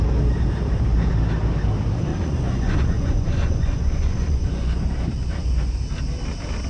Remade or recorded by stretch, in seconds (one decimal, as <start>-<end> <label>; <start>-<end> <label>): 0.0-2.1 recorded; 2.1-4.9 remade; 4.9-6.7 recorded